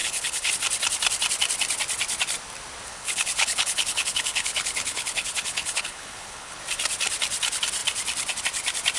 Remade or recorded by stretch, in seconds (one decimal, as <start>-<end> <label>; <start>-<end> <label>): 0.0-0.5 remade; 0.5-2.9 recorded; 2.9-6.6 remade; 6.6-9.0 recorded